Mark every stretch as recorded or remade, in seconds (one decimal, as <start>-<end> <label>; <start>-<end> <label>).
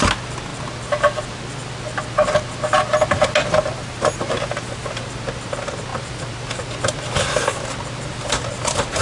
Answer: 0.0-9.0 recorded